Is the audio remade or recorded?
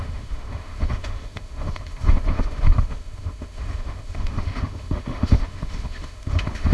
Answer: remade